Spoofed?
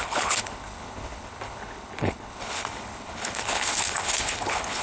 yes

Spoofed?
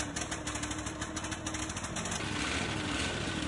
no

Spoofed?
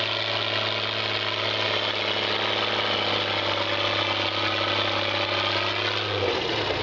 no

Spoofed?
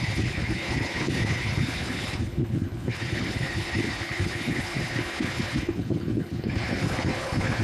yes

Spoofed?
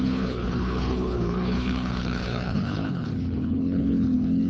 yes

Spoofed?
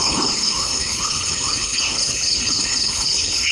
yes